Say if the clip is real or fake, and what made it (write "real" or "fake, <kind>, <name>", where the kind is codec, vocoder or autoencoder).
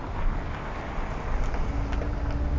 real